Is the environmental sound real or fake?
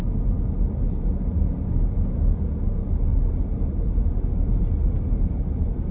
real